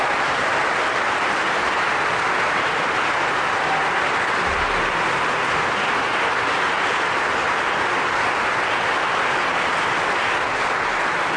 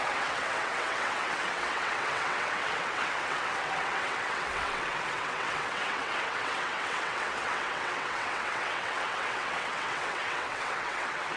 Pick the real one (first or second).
first